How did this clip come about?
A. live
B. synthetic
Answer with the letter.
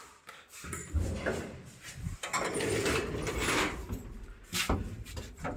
B